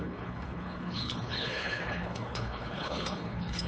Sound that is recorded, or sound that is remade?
remade